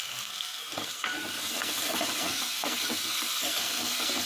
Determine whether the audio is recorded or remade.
remade